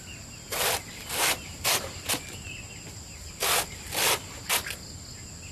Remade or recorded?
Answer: recorded